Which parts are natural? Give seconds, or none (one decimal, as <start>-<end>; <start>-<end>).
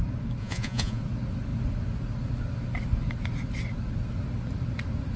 0.0-0.4; 1.0-5.2